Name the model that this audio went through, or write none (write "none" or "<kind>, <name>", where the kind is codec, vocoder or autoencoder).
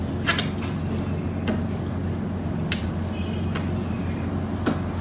none